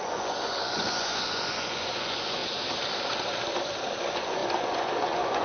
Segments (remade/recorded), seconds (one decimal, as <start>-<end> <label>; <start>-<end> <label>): 0.0-2.4 remade; 2.4-4.0 recorded; 4.0-5.4 remade